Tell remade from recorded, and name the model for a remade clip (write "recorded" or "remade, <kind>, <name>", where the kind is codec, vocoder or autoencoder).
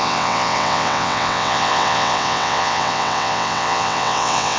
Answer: remade, vocoder, WaveNeXt